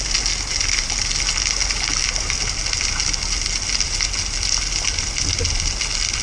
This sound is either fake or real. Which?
real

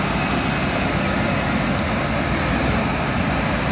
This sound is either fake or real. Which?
real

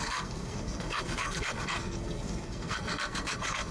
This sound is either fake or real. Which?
fake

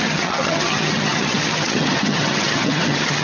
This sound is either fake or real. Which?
fake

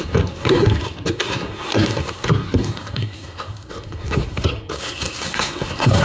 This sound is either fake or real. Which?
fake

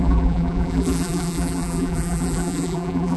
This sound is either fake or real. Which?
fake